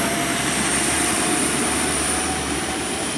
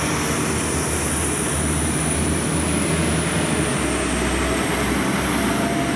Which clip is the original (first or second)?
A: second